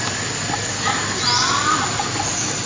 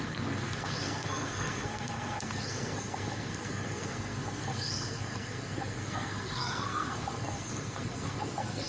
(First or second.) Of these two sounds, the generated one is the second